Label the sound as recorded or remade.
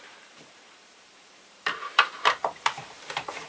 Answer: remade